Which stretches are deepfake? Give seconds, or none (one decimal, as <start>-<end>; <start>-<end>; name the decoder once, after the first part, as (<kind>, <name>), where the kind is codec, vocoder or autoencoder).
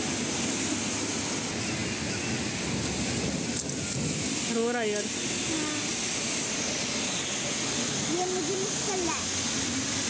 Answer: none